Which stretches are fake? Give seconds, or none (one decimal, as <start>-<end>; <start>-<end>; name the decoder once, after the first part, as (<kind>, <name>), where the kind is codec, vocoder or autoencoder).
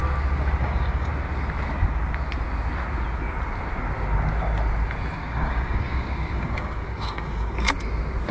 0.6-1.1 (codec, DAC); 5.2-7.7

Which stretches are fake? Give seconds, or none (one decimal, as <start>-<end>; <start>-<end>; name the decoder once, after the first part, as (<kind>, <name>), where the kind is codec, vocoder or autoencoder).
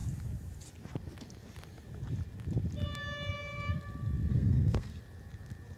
4.3-5.0 (codec, SNAC)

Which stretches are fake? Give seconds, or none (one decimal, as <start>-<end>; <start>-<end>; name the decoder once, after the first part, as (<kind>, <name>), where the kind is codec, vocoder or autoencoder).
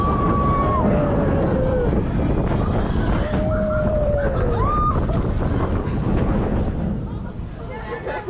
5.8-6.3 (codec, HILCodec)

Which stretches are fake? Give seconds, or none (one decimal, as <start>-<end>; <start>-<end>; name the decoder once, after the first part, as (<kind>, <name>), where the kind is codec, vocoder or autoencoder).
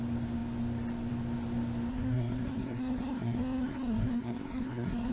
1.9-5.1 (codec, SNAC)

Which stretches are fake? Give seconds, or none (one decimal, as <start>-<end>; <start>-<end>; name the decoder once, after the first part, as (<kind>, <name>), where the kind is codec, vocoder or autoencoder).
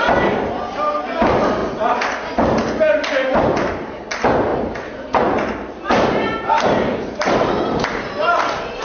4.5-8.8 (vocoder, BigVGAN v2)